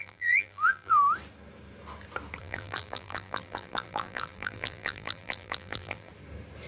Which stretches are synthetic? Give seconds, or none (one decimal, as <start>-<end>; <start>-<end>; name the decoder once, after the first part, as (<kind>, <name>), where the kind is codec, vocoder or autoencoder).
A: 0.0-1.0 (vocoder, BigVGAN v2); 2.4-6.1